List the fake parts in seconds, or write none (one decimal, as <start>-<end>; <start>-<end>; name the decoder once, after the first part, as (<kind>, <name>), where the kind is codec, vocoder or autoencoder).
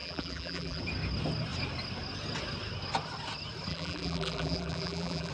0.0-0.8 (vocoder, BigVGAN v2); 3.7-5.3